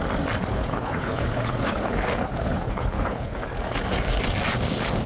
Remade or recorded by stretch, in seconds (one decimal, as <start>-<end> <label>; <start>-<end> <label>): 0.0-0.5 recorded; 0.5-3.4 remade; 3.4-5.1 recorded